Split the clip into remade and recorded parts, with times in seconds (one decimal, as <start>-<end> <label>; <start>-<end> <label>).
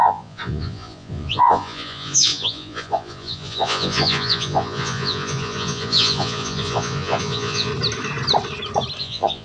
0.0-7.7 remade; 7.7-9.0 recorded; 9.0-9.4 remade